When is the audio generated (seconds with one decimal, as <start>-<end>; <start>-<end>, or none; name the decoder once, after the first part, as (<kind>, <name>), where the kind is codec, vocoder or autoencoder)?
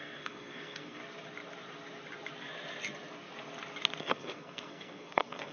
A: 0.0-1.0 (codec, SNAC); 4.0-5.5